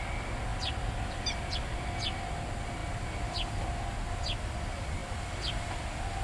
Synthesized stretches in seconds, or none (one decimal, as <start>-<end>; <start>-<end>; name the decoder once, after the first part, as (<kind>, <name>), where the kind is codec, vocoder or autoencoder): 0.5-1.9 (vocoder, BigVGAN v2); 5.0-6.2

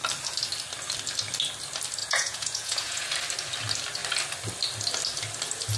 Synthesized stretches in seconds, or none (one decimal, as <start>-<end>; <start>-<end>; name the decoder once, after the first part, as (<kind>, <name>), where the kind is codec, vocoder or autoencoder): 2.0-3.1 (vocoder, Vocos)